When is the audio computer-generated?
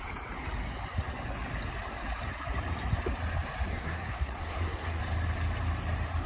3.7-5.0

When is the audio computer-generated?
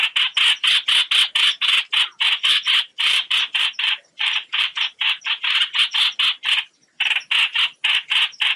2.9-5.2